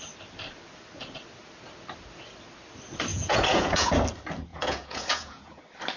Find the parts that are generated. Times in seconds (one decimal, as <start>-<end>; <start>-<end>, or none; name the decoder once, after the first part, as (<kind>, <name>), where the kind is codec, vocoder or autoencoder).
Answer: 3.1-3.9 (vocoder, Vocos); 4.5-5.6